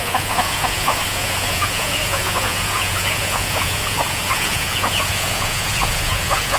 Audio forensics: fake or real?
fake